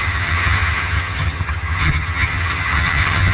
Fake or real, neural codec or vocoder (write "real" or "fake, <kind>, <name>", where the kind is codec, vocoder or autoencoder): fake, vocoder, HiFi-GAN